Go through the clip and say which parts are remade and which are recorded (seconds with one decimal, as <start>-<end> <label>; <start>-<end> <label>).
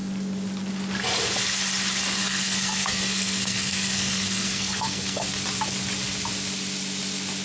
0.0-2.2 recorded; 2.2-5.3 remade; 5.3-7.4 recorded